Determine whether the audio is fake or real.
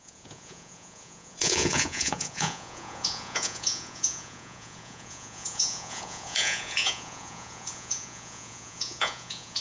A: fake